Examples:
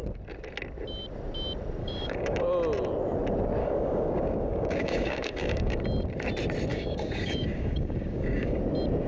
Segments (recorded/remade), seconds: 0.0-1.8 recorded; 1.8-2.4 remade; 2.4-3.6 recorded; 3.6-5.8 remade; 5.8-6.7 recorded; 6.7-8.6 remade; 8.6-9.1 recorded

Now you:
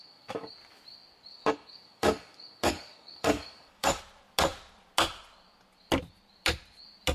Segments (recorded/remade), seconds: 0.0-0.5 remade; 0.5-1.3 recorded; 1.3-4.0 remade; 4.0-7.1 recorded

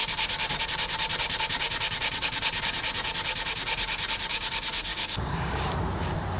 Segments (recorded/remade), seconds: 0.0-4.9 recorded; 4.9-5.6 remade; 5.6-6.4 recorded

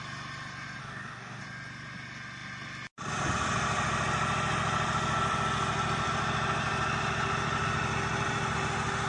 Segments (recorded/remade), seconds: 0.0-0.8 recorded; 0.8-1.4 remade; 1.4-9.1 recorded

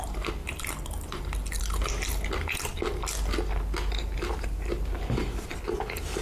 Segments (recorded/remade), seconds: 0.0-6.2 recorded